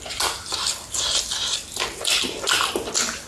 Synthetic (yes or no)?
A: no